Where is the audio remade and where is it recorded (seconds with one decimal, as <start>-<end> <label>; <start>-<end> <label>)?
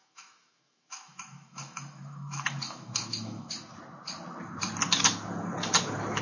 0.0-3.5 remade; 3.5-6.2 recorded